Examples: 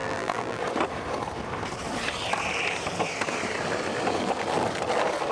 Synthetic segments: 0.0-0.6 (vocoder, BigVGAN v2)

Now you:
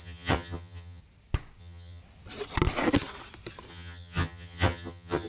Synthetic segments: 0.0-1.0 (vocoder, HiFi-GAN); 1.6-2.0; 3.7-5.3

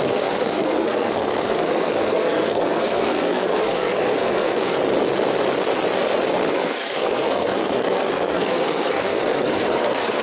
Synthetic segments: 0.0-4.8 (codec, SNAC); 6.5-10.2